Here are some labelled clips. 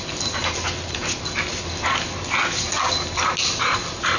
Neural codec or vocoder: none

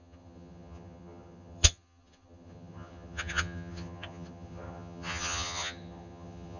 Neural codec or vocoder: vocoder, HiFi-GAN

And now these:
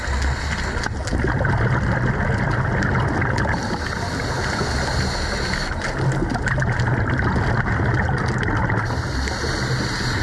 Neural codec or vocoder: none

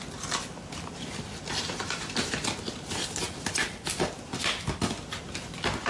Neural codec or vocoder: none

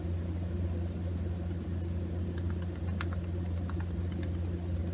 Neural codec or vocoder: none